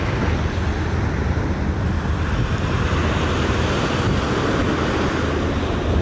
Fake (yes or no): no